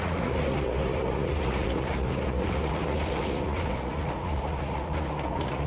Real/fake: fake